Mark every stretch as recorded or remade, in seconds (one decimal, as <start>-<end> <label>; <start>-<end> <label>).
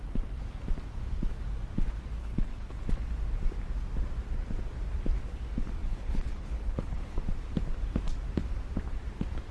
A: 0.0-2.2 recorded; 2.2-2.8 remade; 2.8-5.8 recorded; 5.8-7.2 remade; 7.2-9.5 recorded